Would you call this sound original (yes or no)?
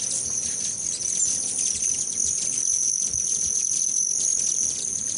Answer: yes